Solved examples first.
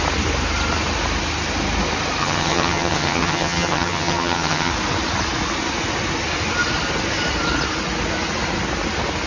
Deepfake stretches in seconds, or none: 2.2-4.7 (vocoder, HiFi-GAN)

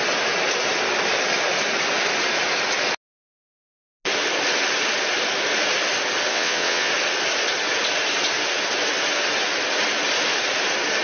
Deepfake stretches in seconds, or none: 6.3-6.9 (vocoder, WaveNeXt)